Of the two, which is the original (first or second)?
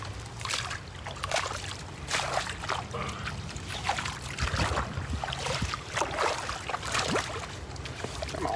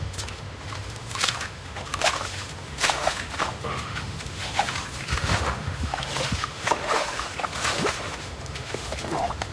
first